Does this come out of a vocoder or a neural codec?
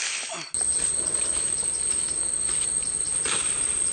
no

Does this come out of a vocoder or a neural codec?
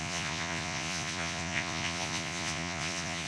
yes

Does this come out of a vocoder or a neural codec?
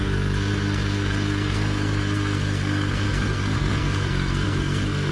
yes